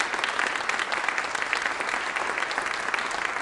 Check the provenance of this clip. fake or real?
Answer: real